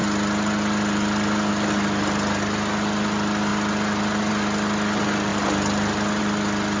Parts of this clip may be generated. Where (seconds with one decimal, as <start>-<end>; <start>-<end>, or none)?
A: none